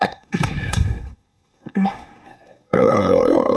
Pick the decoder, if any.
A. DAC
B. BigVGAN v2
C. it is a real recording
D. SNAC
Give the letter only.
D